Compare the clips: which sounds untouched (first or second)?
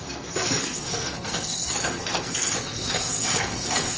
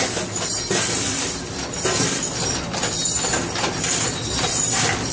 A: second